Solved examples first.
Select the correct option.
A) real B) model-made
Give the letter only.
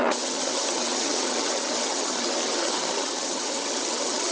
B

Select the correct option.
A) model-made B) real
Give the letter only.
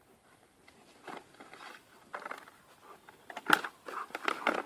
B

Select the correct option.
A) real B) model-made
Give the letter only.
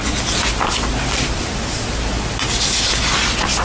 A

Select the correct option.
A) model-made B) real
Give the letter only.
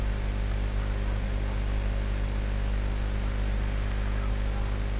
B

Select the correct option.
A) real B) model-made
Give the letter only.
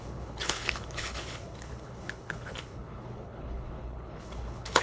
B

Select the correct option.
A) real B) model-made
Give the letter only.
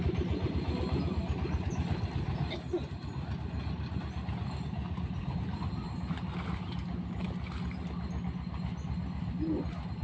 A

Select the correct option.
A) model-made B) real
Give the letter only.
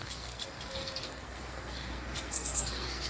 A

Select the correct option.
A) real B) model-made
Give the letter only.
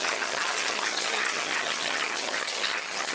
B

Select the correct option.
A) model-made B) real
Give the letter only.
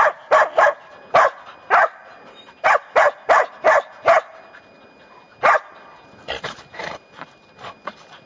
B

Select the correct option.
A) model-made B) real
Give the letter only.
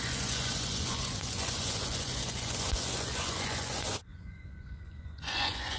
A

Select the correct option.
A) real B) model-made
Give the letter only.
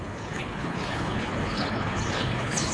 B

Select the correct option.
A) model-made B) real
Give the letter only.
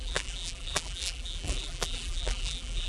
A